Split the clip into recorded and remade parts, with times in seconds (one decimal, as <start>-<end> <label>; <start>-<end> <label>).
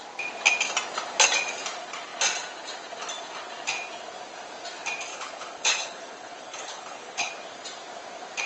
0.0-5.1 recorded; 5.1-7.3 remade; 7.3-8.5 recorded